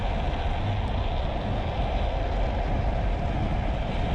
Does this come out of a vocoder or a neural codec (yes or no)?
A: no